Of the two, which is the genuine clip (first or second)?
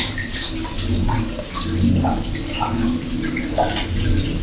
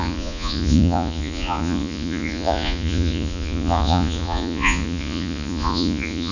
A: first